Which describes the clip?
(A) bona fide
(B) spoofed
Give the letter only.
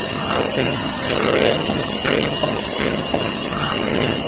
B